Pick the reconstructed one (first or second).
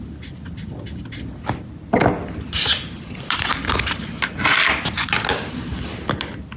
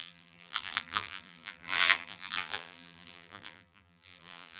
second